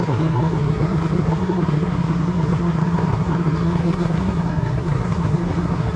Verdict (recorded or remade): remade